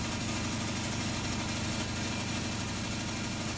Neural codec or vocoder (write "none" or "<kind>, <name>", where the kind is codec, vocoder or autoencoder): none